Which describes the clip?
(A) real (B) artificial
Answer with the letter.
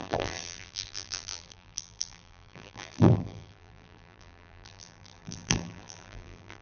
B